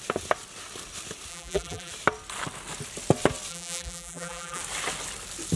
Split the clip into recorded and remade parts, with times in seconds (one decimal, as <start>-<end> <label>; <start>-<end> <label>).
0.0-1.3 recorded; 1.3-1.9 remade; 1.9-3.5 recorded; 3.5-4.6 remade; 4.6-5.6 recorded